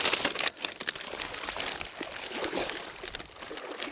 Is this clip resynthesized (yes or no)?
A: no